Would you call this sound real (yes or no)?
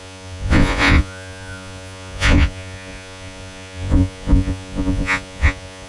no